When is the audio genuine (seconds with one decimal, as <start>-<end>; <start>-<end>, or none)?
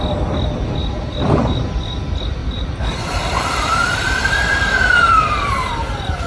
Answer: 0.0-0.8; 2.0-2.4; 5.7-6.3